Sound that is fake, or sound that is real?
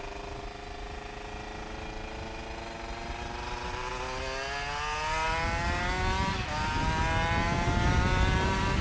real